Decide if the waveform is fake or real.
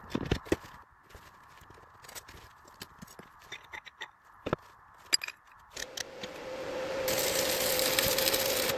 real